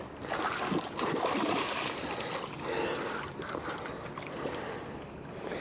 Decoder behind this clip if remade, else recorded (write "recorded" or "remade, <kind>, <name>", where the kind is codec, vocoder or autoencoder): recorded